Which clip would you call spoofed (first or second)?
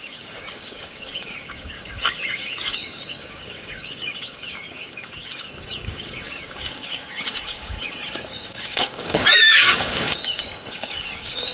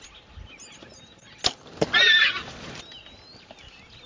first